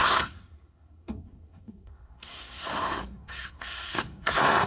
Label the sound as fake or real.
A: fake